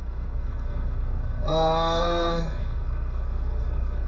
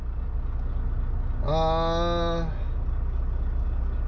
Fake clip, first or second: first